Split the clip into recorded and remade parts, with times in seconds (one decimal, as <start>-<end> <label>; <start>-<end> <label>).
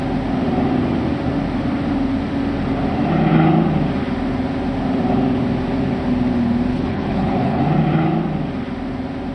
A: 0.0-6.7 recorded; 6.7-7.6 remade; 7.6-9.3 recorded